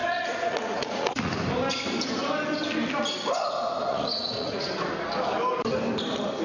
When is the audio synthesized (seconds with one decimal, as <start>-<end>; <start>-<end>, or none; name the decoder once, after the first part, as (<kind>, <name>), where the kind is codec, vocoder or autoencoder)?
0.0-1.3 (vocoder, Vocos); 3.9-4.7